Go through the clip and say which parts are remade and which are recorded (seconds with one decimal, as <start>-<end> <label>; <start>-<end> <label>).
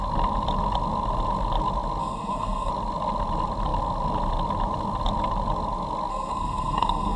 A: 0.0-2.0 recorded; 2.0-2.7 remade; 2.7-6.1 recorded; 6.1-7.2 remade